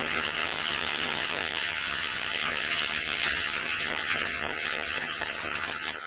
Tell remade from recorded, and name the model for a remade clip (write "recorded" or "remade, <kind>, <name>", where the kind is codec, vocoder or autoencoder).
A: remade, vocoder, HiFi-GAN